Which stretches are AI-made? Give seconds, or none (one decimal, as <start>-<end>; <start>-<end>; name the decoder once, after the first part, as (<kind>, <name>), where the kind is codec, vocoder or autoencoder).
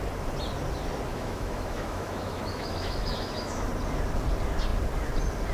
1.1-3.7 (autoencoder, DAC-VAE)